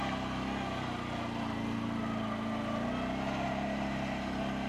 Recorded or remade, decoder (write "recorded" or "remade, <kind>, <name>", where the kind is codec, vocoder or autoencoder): recorded